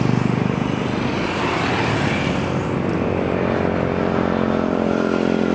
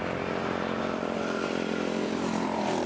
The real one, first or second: first